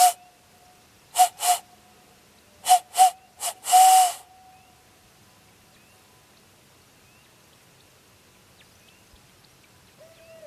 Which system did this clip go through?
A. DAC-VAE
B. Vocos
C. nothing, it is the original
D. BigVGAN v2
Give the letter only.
C